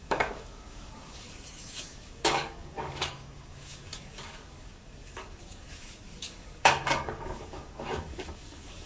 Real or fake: fake